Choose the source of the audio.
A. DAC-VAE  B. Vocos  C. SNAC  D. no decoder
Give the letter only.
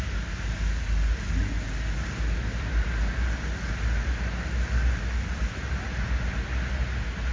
D